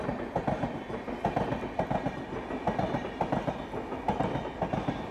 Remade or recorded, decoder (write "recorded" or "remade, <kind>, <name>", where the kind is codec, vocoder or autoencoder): recorded